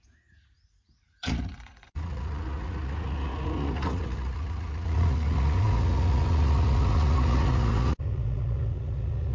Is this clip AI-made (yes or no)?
yes